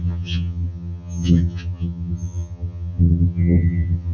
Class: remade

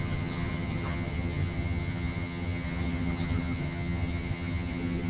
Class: remade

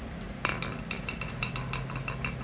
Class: recorded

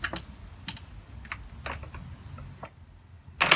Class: recorded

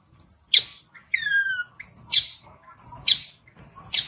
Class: recorded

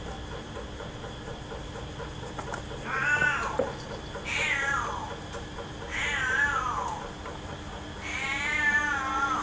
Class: recorded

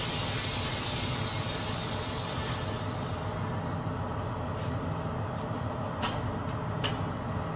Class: recorded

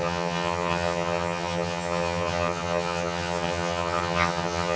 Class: remade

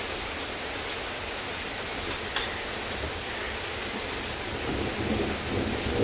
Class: recorded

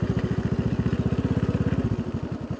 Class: recorded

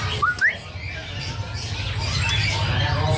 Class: recorded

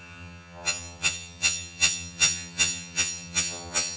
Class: remade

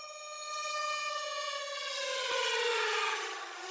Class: remade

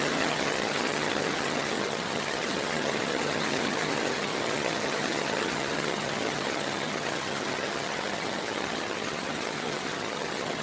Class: remade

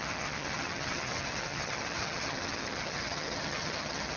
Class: remade